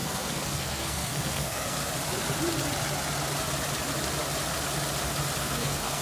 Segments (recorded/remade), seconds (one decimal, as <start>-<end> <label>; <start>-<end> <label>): 0.0-1.8 remade; 1.8-5.4 recorded; 5.4-6.0 remade